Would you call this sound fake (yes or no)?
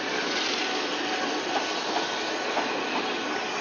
no